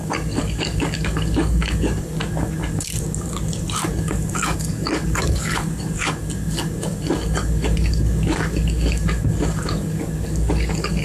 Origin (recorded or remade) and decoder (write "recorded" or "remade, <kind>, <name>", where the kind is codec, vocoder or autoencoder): remade, codec, DAC